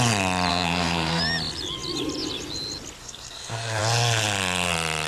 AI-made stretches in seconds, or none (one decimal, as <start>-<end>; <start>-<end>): 0.5-1.2; 3.0-3.8